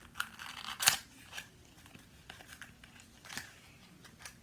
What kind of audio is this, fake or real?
real